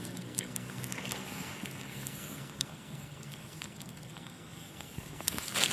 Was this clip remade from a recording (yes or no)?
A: yes